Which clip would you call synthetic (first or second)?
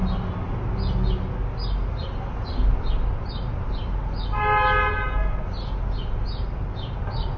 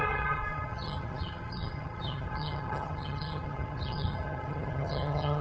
second